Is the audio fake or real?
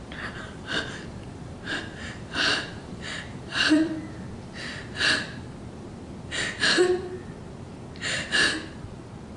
fake